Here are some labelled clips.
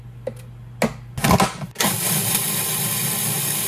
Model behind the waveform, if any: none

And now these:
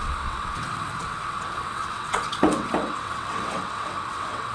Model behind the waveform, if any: vocoder, WaveNeXt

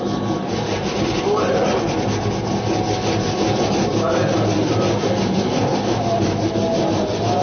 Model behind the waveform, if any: none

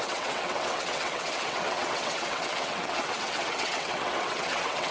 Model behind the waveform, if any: vocoder, WaveNeXt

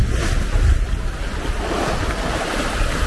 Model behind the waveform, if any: none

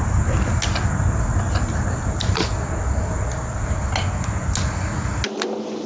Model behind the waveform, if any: none